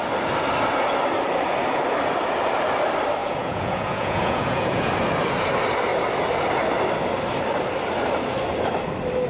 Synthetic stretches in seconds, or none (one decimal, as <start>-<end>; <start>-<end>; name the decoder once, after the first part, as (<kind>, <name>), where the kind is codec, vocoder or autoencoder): 3.2-4.9 (vocoder, Vocos)